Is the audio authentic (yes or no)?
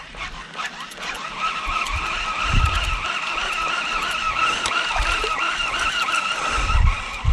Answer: yes